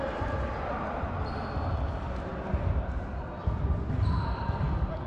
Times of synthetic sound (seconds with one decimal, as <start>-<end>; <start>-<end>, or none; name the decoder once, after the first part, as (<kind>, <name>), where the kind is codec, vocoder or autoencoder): 0.0-0.8 (vocoder, BigVGAN v2); 1.7-2.3; 3.9-5.1